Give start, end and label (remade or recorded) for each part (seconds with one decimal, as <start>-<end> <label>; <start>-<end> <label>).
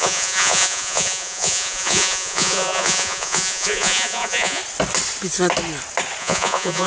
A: 0.0-4.6 remade; 4.6-6.2 recorded; 6.2-6.9 remade